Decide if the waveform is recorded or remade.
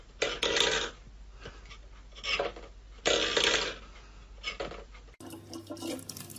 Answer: recorded